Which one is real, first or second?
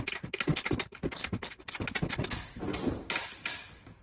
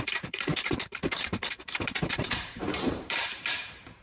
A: first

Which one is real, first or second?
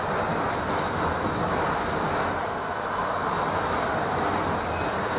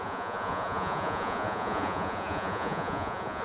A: first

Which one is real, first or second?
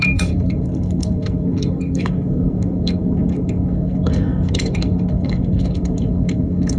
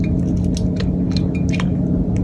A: second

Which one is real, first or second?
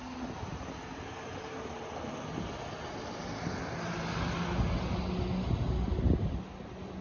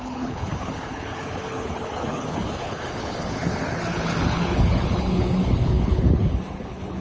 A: first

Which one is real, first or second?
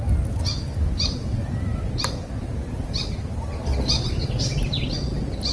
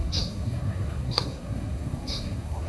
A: first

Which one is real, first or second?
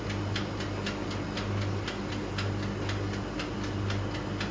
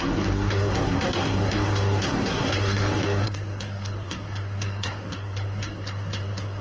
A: first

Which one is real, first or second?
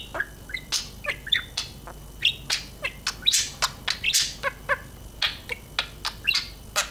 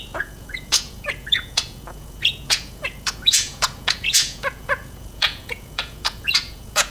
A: first